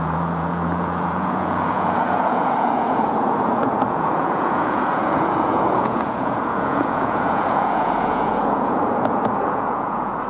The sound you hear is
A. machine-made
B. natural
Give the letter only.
A